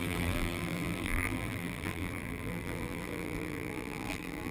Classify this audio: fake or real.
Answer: fake